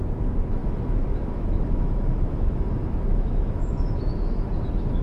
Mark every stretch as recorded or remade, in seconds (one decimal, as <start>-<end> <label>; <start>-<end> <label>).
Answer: 0.0-5.0 remade